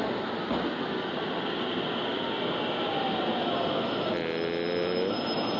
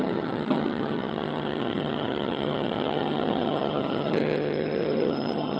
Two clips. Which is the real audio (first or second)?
first